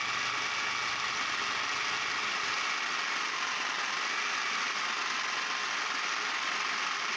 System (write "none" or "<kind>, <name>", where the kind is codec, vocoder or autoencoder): none